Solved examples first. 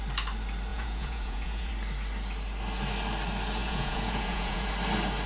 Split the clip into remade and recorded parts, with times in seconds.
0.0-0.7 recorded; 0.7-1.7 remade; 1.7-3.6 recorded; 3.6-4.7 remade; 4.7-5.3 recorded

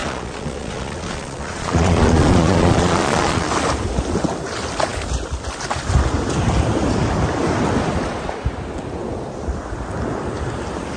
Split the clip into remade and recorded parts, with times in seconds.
0.0-3.5 remade; 3.5-11.0 recorded

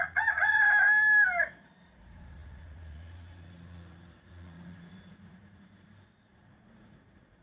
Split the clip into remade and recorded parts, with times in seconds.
0.0-0.6 remade; 0.6-1.5 recorded; 1.5-7.4 remade

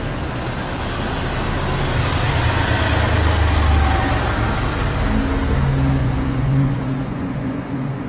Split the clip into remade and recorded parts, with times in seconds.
0.0-6.0 recorded; 6.0-8.1 remade

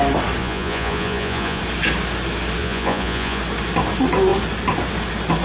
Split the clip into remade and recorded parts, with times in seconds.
0.0-0.4 recorded; 0.4-1.6 remade; 1.6-2.6 recorded; 2.6-3.4 remade; 3.4-5.4 recorded

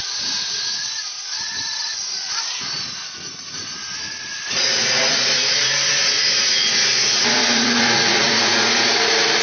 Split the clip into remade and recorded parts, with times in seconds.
0.0-9.4 remade

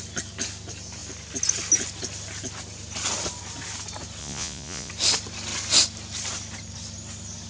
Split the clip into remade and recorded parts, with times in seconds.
0.0-4.2 recorded; 4.2-4.9 remade; 4.9-7.5 recorded

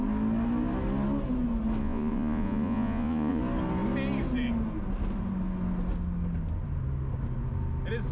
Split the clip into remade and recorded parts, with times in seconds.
0.0-1.8 recorded; 1.8-3.4 remade; 3.4-8.1 recorded